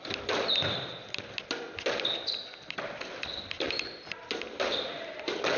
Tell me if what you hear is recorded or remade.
recorded